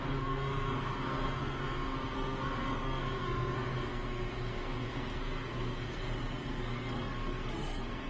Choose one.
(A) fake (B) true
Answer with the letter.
A